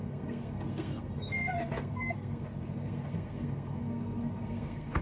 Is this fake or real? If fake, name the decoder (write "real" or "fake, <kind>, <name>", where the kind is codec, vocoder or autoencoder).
fake, codec, SNAC